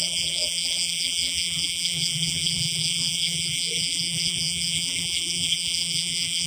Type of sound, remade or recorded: remade